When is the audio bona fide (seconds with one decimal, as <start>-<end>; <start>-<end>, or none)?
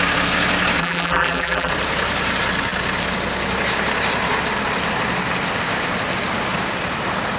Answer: 0.0-0.8; 1.7-7.4